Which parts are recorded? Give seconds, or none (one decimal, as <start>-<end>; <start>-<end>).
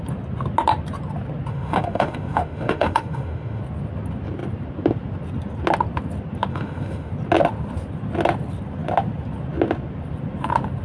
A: 0.0-1.5; 3.6-6.5; 7.1-10.8